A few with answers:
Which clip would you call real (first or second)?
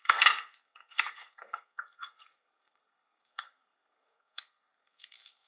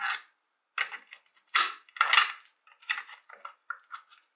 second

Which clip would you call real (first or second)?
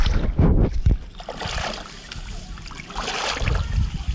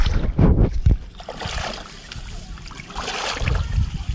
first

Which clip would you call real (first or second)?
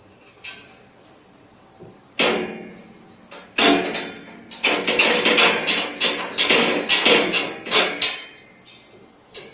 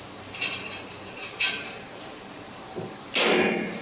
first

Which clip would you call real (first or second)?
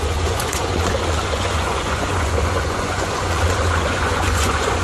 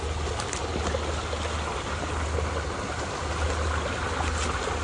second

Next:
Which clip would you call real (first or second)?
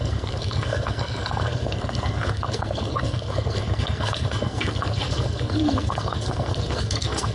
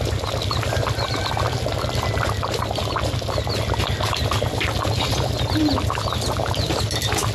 second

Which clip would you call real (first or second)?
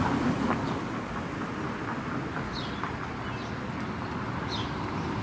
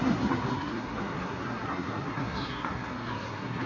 first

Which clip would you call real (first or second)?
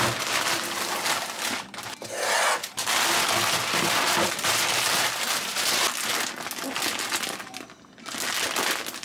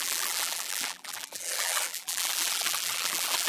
first